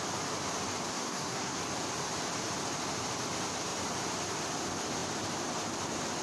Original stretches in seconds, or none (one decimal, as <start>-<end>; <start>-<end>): 0.0-0.9; 1.6-6.2